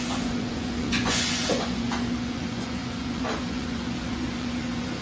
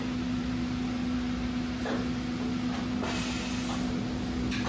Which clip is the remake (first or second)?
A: first